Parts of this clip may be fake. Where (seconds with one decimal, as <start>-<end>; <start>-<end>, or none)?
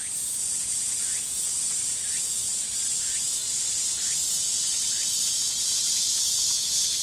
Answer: 0.0-2.4; 5.4-7.0